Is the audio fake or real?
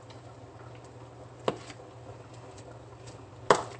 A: real